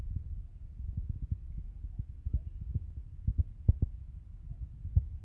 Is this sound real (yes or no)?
yes